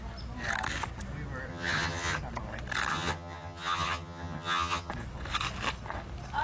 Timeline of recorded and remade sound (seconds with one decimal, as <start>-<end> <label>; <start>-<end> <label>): 0.0-1.5 recorded; 1.5-2.2 remade; 2.2-2.9 recorded; 2.9-4.9 remade; 4.9-6.4 recorded